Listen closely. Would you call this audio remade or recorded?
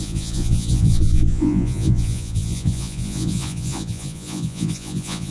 remade